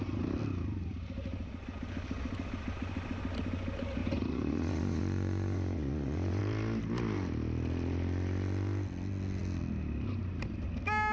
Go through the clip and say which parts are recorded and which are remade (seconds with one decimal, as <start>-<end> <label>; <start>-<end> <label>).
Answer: 0.0-4.0 recorded; 4.0-6.4 remade; 6.4-11.1 recorded